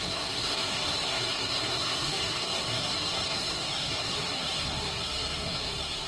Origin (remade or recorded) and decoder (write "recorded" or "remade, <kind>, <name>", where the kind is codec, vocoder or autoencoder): remade, codec, SNAC